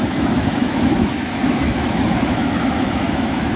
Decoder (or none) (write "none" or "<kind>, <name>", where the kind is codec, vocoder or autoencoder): autoencoder, DAC-VAE